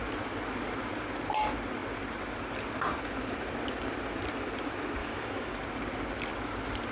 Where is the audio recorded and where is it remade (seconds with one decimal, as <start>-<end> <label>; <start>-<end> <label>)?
0.0-5.0 recorded; 5.0-5.5 remade; 5.5-6.9 recorded